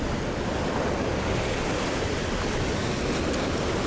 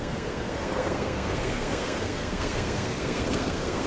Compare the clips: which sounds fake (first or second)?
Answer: second